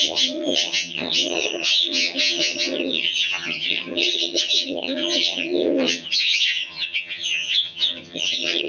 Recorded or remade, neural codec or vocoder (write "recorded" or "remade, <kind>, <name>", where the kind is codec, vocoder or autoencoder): remade, vocoder, HiFi-GAN